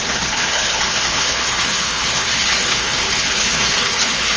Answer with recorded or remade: remade